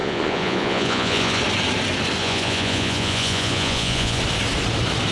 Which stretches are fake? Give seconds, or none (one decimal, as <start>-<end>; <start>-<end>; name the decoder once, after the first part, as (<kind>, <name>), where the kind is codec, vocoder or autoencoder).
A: 0.0-1.4 (vocoder, Vocos); 2.2-4.2